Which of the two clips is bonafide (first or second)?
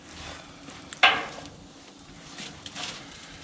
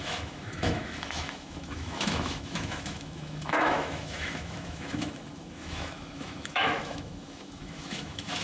first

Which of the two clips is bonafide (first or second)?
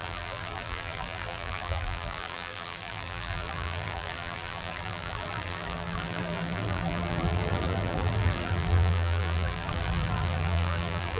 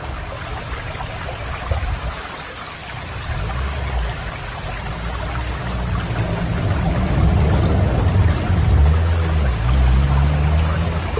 second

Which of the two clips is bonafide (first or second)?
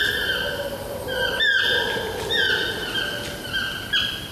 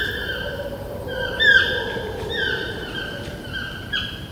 first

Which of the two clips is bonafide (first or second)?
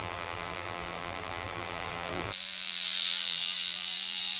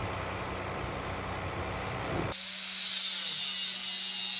second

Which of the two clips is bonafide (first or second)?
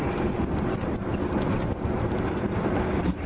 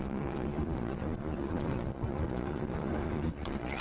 first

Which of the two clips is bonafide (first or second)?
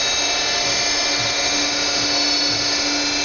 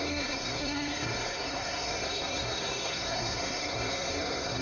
first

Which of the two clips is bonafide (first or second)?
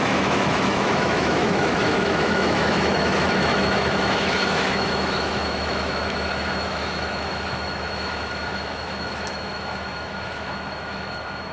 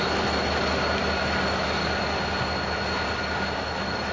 second